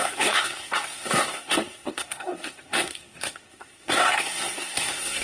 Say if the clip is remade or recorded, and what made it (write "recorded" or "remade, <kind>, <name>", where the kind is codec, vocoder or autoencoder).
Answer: remade, codec, SNAC